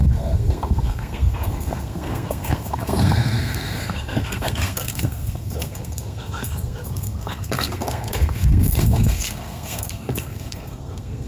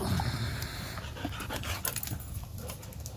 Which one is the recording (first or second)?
second